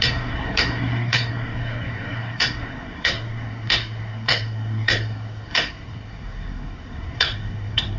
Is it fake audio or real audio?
fake